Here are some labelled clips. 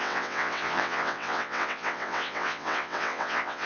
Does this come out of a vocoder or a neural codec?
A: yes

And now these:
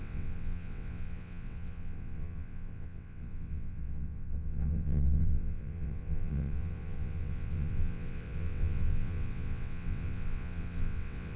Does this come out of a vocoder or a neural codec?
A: yes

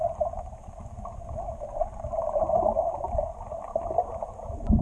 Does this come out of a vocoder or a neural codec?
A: no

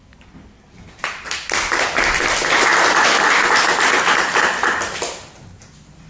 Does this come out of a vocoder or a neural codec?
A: no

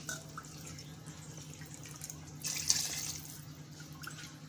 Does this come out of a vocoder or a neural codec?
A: no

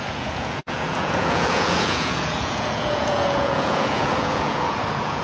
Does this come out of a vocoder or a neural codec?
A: yes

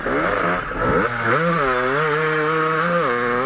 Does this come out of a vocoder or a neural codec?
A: no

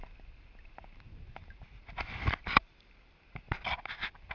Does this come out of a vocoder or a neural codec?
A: no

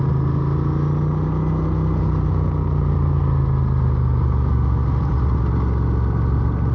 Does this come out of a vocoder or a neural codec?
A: no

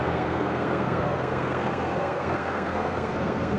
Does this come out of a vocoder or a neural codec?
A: yes